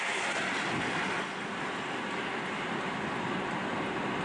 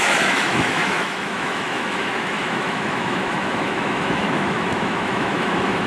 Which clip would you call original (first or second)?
first